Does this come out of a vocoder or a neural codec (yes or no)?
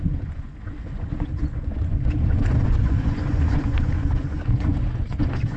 yes